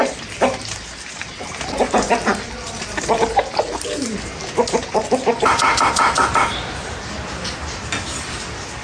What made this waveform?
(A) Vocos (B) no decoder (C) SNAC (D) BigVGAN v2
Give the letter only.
B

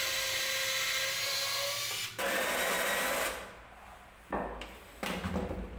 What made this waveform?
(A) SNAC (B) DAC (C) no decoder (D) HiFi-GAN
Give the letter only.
C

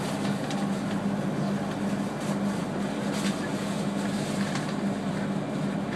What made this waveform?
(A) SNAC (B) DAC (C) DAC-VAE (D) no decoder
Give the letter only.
D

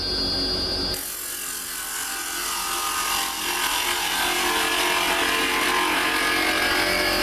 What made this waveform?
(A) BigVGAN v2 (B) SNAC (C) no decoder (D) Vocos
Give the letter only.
C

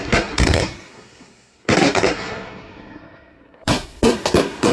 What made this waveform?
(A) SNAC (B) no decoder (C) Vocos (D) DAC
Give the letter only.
A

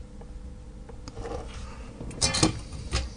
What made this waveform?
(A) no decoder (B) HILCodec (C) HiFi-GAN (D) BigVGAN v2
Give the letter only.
A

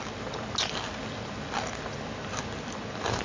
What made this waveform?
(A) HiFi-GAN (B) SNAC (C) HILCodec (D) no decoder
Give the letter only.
D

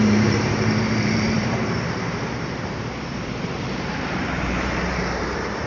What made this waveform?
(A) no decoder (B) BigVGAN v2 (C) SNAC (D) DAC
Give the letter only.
B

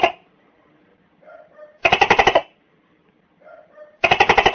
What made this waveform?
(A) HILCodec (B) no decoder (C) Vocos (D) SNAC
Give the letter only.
B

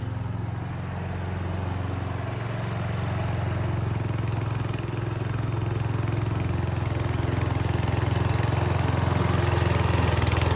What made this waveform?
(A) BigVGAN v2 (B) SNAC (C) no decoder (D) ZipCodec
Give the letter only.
C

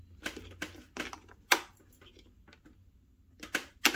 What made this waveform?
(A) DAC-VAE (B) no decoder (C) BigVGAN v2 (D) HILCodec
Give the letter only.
B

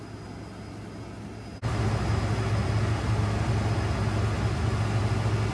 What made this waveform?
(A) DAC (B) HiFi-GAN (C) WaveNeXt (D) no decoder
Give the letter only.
D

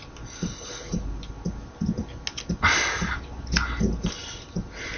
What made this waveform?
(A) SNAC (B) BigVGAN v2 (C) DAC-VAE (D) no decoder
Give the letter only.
D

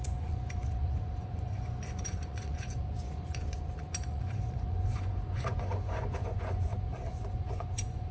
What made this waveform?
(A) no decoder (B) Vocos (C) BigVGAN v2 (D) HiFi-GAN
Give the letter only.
B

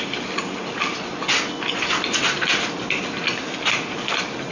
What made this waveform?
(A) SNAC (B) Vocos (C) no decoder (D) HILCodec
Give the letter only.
C